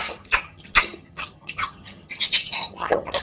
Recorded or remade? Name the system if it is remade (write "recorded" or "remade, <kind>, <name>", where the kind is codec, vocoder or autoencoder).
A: remade, vocoder, HiFi-GAN